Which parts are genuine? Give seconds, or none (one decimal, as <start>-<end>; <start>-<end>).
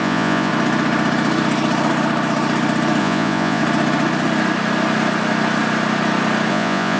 0.5-3.0; 3.6-6.5